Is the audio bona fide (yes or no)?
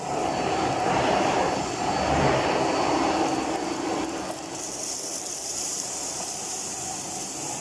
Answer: no